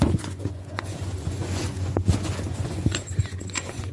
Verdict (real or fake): fake